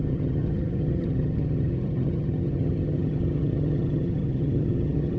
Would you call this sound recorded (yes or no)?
no